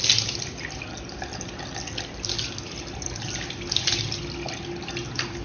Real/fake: real